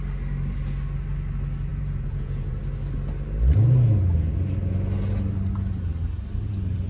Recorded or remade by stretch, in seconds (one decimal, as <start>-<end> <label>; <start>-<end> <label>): 0.0-1.7 recorded; 1.7-2.6 remade; 2.6-6.9 recorded